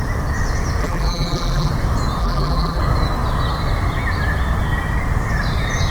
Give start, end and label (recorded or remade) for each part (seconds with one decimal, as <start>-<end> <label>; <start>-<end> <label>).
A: 0.0-0.8 recorded; 0.8-1.7 remade; 1.7-2.2 recorded; 2.2-2.8 remade; 2.8-5.9 recorded